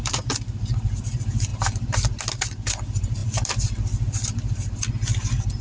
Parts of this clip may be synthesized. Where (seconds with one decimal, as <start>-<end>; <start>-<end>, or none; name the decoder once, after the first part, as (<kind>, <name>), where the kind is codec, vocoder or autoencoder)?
none